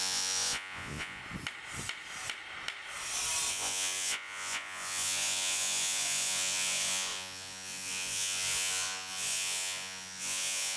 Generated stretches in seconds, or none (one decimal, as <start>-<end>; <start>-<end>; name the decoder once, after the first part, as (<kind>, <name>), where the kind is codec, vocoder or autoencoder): 0.0-1.2 (vocoder, Vocos); 3.5-10.8